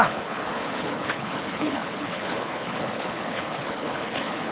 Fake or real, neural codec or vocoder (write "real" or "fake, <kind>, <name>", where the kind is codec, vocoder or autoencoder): fake, codec, HILCodec